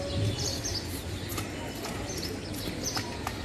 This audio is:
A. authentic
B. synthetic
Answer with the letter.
A